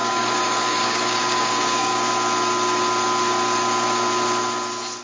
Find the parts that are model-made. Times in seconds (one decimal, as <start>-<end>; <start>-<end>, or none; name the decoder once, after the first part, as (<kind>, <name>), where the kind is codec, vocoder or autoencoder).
0.0-1.9 (codec, DAC)